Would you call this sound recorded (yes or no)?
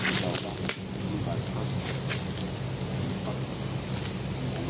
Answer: yes